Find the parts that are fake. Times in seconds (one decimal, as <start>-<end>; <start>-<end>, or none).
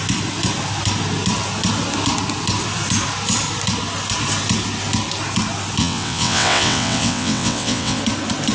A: 5.8-8.0